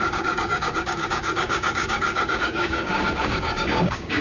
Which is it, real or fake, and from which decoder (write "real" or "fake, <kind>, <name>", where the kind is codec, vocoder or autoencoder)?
fake, codec, DAC